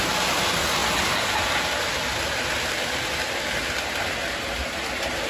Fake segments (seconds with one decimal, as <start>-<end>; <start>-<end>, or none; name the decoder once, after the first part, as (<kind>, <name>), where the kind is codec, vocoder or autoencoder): none